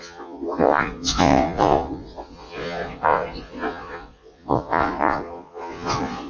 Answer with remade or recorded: remade